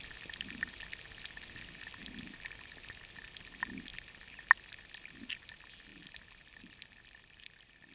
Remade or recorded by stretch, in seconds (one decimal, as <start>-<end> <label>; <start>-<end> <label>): 0.0-2.0 recorded; 2.0-3.2 remade; 3.2-5.9 recorded; 5.9-7.9 remade